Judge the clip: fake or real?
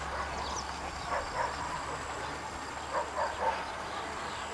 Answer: real